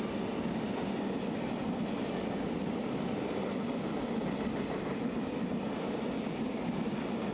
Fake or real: real